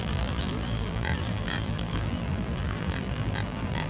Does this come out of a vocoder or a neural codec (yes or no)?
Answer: yes